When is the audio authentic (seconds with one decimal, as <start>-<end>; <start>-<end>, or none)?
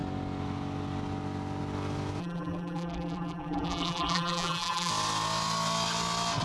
0.0-2.2; 4.9-6.4